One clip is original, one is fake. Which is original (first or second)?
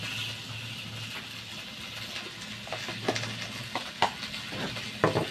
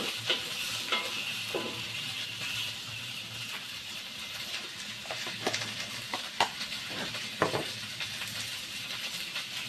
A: first